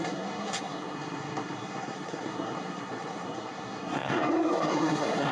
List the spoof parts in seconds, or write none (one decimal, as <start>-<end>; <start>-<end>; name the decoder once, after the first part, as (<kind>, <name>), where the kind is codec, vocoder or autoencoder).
0.0-5.3 (codec, SNAC)